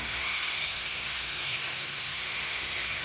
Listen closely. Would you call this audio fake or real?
fake